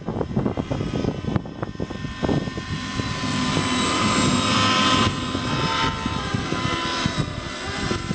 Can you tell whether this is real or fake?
real